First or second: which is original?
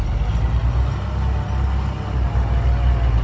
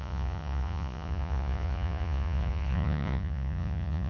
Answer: first